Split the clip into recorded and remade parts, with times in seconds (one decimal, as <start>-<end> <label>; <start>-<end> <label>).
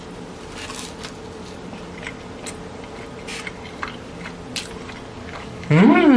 0.0-5.2 recorded; 5.2-6.2 remade